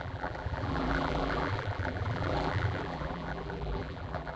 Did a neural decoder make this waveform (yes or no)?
yes